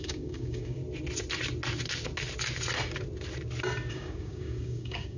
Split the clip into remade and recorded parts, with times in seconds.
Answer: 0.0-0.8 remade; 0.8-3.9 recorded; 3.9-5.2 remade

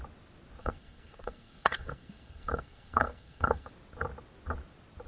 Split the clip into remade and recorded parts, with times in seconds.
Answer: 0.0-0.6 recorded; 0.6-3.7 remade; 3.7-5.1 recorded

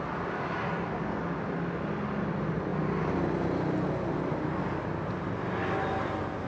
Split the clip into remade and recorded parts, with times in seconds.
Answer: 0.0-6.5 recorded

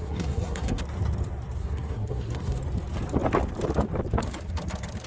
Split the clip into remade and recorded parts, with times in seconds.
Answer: 0.0-0.8 remade; 0.8-1.6 recorded; 1.6-2.6 remade; 2.6-5.1 recorded

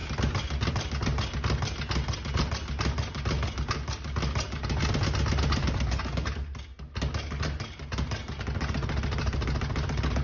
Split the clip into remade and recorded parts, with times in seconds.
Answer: 0.0-10.2 recorded

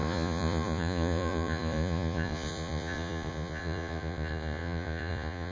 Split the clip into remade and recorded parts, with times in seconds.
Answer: 0.0-5.5 remade